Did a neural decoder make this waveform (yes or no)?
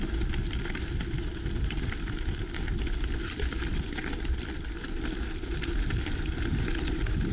no